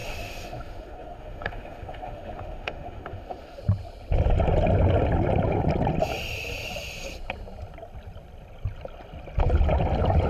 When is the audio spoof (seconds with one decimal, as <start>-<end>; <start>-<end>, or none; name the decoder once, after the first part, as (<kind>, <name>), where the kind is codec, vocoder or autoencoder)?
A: 0.0-3.6 (autoencoder, DAC-VAE)